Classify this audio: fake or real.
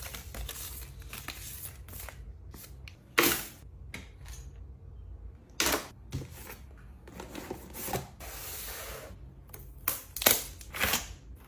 real